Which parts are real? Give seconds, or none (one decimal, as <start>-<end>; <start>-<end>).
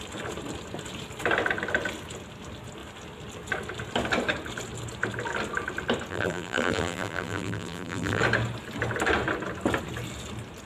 0.0-6.1; 8.2-10.7